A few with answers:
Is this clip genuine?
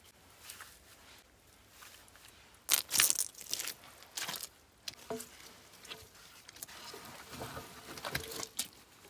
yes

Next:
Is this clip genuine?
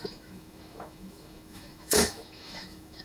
no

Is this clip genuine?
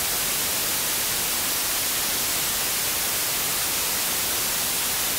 yes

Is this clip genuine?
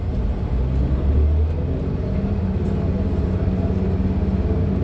yes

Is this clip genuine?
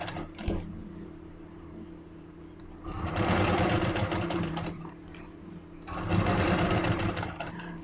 no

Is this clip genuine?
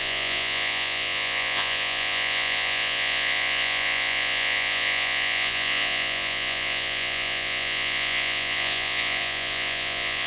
no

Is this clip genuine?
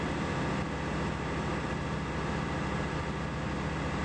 yes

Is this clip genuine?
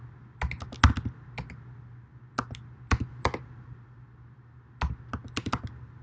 yes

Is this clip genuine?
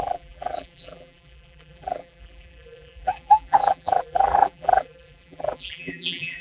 no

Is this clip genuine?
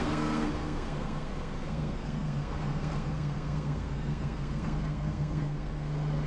no